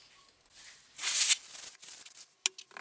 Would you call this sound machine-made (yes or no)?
no